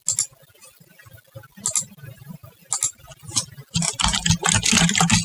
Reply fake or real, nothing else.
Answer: real